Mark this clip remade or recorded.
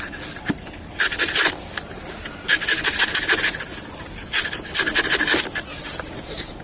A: recorded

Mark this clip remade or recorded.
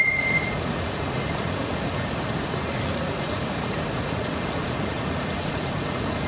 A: remade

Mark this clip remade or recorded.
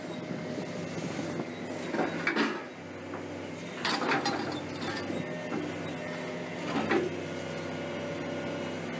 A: recorded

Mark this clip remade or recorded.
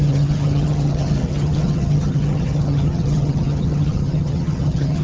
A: remade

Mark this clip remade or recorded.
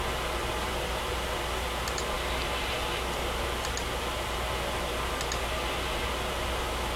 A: recorded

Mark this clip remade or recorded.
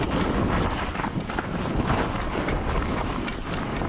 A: recorded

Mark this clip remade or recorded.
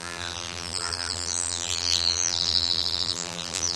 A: remade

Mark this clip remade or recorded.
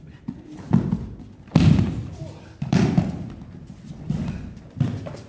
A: recorded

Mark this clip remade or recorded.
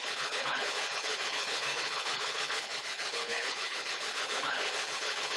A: remade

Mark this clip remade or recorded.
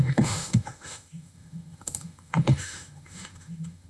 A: remade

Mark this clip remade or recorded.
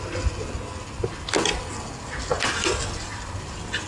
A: recorded